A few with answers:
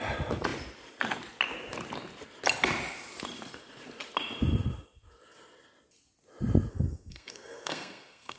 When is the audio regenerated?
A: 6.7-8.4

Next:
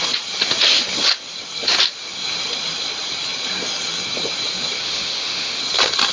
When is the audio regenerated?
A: 4.8-5.6

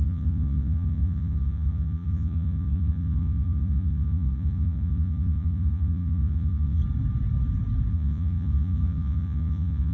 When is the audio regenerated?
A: 0.0-6.8; 7.9-9.9

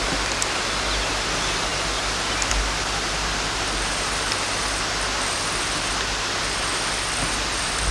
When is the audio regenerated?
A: none

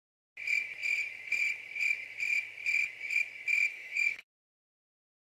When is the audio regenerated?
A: 3.7-5.3